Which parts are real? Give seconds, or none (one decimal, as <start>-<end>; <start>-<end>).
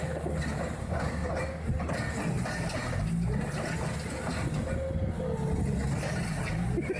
0.0-0.8; 1.3-7.0